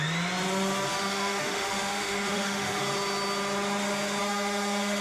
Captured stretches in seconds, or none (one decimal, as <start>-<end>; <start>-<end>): 0.0-0.9; 2.8-4.2